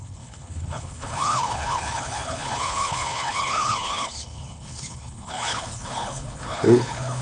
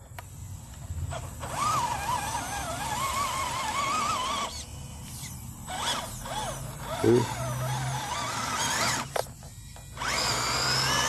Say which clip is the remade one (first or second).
first